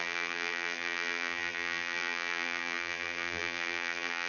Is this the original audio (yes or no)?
no